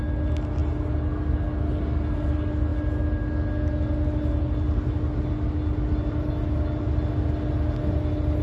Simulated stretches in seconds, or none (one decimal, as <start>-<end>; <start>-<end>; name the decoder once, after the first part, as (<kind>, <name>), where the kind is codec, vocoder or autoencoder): none